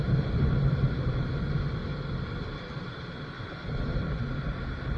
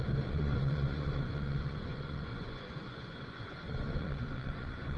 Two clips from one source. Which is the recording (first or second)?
first